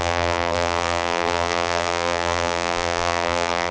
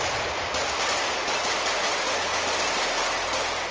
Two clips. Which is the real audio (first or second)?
second